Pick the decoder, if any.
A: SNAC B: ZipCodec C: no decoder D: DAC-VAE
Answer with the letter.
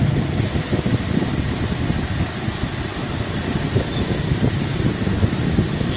C